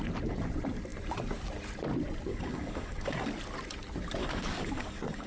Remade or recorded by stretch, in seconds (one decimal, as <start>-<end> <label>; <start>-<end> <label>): 0.0-2.3 recorded; 2.3-3.3 remade; 3.3-4.2 recorded; 4.2-5.3 remade